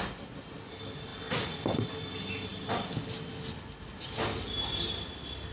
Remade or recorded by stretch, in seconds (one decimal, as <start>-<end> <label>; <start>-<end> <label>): 0.0-5.5 recorded